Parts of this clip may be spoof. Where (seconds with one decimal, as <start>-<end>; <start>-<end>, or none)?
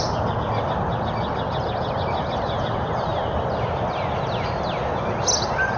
3.1-3.6